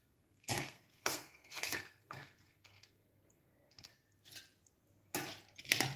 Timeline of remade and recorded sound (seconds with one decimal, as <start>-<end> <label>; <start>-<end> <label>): 0.0-3.9 remade; 3.9-6.0 recorded